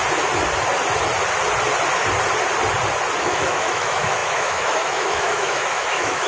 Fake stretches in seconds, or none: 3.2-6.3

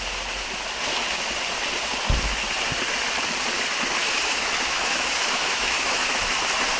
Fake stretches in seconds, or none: 4.0-6.2

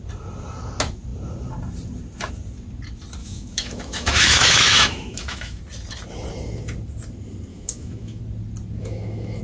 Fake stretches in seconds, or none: 3.2-5.6; 7.5-8.2; 8.8-9.4

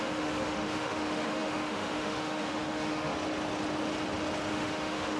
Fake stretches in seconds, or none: 0.0-3.1; 4.5-5.2